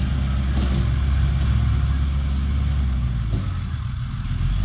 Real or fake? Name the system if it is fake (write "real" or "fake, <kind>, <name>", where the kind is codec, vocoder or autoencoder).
real